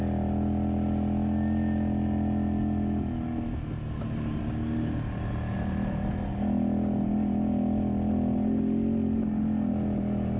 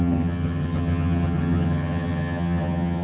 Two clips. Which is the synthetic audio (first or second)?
second